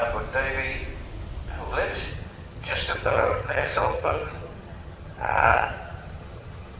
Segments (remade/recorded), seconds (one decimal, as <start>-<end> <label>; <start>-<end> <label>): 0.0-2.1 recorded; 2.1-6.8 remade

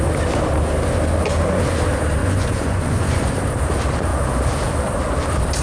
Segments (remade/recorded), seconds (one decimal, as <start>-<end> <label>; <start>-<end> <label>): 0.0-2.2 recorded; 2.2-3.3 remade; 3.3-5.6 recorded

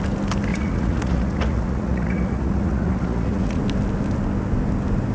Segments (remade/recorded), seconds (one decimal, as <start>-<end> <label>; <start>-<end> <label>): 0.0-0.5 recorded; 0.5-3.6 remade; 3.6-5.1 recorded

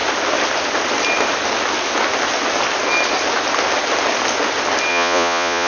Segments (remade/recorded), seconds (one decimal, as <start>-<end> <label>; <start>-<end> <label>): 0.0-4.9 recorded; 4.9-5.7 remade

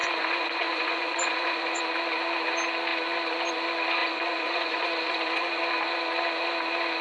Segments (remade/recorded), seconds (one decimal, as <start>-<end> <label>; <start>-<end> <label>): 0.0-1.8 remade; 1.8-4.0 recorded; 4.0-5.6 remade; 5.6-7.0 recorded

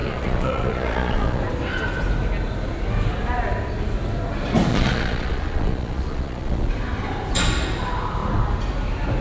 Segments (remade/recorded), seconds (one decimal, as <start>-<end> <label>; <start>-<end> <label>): 0.0-1.4 remade; 1.4-4.7 recorded; 4.7-6.7 remade; 6.7-9.2 recorded